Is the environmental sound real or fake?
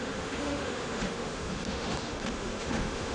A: fake